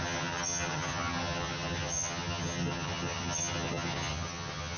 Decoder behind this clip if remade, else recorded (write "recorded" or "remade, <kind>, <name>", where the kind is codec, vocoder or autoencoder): remade, vocoder, HiFi-GAN